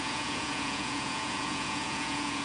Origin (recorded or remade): remade